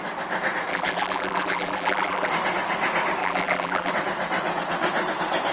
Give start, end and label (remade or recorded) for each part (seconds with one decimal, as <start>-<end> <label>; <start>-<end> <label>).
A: 0.0-0.7 recorded; 0.7-2.3 remade; 2.3-3.2 recorded; 3.2-3.9 remade; 3.9-5.5 recorded